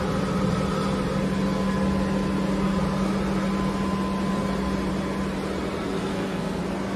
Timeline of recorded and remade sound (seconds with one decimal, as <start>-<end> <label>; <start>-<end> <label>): 0.0-6.1 recorded; 6.1-6.6 remade; 6.6-7.0 recorded